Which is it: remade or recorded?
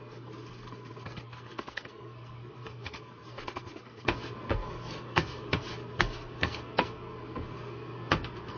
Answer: remade